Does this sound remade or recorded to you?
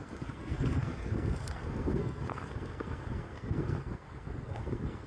remade